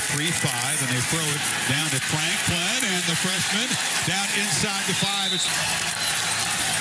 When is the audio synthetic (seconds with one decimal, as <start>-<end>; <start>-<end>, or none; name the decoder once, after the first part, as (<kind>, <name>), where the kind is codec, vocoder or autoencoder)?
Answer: 1.3-3.9 (vocoder, BigVGAN v2)